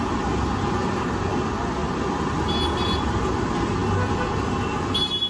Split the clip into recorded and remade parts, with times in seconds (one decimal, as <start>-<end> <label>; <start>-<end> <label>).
0.0-5.3 recorded